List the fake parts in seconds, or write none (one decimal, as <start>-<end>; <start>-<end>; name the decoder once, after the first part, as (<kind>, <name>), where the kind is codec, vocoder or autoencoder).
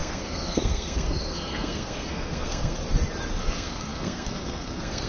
0.0-2.8 (codec, SNAC); 3.4-5.1